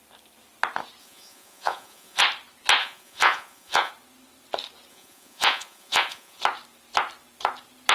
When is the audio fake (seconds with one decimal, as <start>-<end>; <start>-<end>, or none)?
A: 1.0-2.2; 2.8-3.9; 4.9-6.4